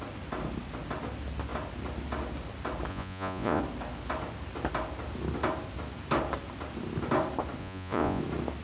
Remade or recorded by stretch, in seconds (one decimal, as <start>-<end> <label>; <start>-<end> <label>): 0.0-2.9 recorded; 2.9-3.6 remade; 3.6-7.6 recorded; 7.6-8.2 remade; 8.2-8.6 recorded